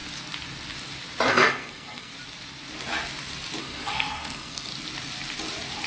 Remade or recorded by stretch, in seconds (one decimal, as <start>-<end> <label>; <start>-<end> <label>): 0.0-1.3 recorded; 1.3-2.1 remade; 2.1-3.6 recorded; 3.6-4.7 remade; 4.7-5.9 recorded